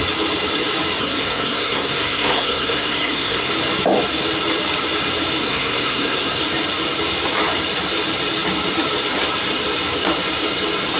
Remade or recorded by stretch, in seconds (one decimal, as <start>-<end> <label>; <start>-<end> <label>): 0.0-1.0 recorded; 1.0-3.5 remade; 3.5-5.4 recorded; 5.4-6.4 remade; 6.4-11.0 recorded

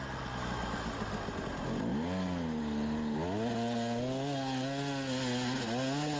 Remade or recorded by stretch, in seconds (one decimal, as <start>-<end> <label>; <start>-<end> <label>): 0.0-6.2 recorded

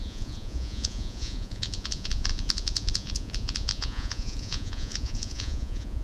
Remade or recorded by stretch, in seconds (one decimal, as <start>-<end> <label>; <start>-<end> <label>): 0.0-6.0 remade

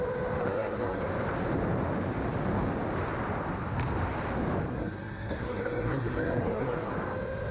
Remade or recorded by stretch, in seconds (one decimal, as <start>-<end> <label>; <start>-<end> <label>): 0.0-0.4 recorded; 0.4-1.0 remade; 1.0-4.7 recorded; 4.7-6.9 remade; 6.9-7.5 recorded